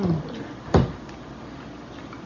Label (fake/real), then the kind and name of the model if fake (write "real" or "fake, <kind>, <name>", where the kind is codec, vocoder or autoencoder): real